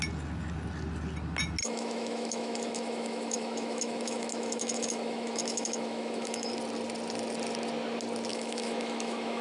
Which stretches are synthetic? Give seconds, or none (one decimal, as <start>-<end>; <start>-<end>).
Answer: 1.6-6.5; 8.3-9.4